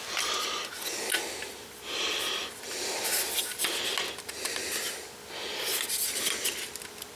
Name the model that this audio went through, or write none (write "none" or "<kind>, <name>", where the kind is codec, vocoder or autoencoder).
none